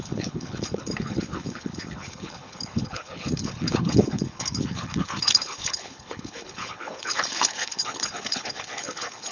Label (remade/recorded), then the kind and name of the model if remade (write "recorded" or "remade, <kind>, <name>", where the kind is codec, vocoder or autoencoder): remade, codec, HILCodec